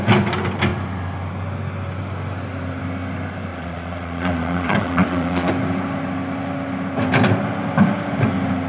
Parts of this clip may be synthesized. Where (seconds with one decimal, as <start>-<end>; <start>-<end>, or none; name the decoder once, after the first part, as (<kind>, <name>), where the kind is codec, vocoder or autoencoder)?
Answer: 3.5-5.5 (vocoder, Vocos)